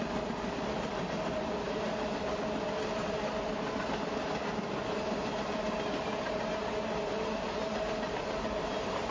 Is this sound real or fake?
real